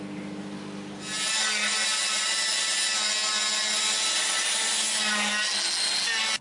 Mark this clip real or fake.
real